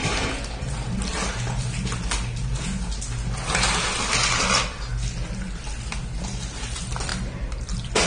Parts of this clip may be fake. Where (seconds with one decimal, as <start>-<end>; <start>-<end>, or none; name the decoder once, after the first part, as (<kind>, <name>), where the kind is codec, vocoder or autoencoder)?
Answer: none